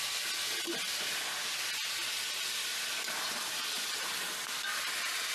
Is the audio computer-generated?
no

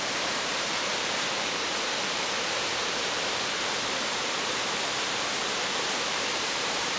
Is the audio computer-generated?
yes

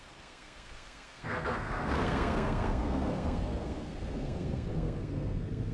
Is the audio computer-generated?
yes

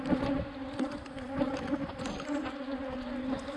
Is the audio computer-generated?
no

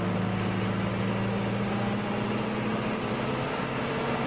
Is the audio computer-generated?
no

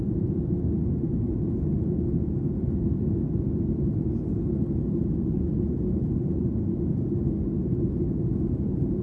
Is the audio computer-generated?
no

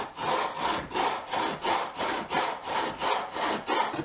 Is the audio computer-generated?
no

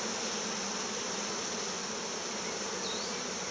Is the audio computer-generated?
no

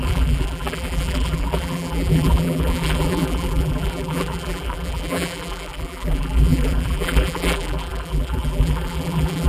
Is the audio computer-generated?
yes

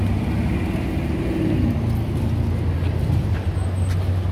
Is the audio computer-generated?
no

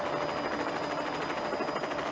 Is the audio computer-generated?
no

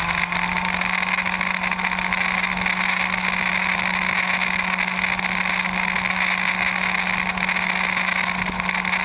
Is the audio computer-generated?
no